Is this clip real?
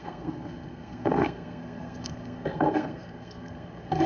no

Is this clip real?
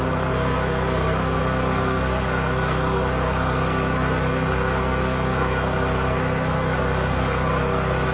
no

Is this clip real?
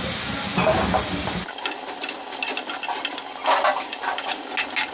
yes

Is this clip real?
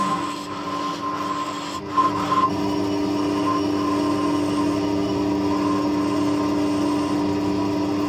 yes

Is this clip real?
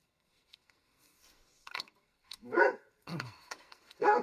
no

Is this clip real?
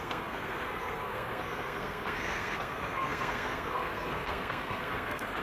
no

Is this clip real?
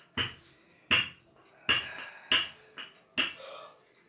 yes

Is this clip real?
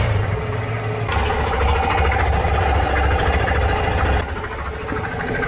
yes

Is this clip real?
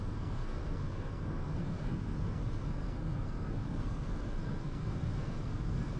no